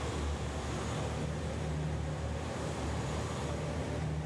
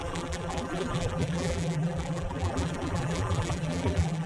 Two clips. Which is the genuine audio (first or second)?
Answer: first